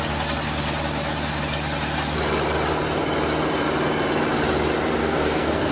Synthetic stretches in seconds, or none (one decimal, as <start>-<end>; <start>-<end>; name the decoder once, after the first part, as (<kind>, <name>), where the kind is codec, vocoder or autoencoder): 5.0-5.7 (codec, SNAC)